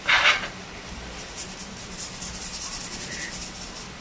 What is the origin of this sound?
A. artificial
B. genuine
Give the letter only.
A